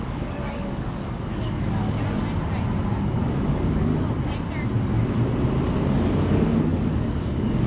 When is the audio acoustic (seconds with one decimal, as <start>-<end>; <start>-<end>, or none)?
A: 1.8-3.0; 3.9-6.3